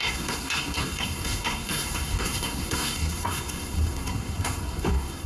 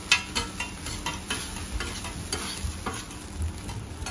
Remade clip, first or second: first